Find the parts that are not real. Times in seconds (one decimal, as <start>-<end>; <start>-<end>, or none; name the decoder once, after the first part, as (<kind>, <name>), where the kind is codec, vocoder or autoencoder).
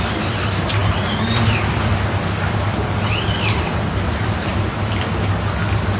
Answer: 0.8-3.9 (vocoder, BigVGAN v2); 4.5-5.3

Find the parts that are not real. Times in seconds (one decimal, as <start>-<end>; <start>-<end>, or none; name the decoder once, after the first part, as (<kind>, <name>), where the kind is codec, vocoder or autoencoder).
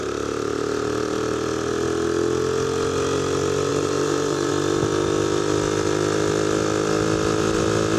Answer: 3.7-4.5 (vocoder, BigVGAN v2)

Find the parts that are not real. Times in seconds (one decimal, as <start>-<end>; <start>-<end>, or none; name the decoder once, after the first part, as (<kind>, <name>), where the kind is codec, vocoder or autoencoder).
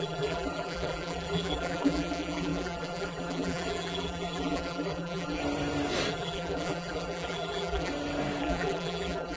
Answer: 0.0-5.4 (vocoder, BigVGAN v2); 6.1-7.9; 8.4-9.4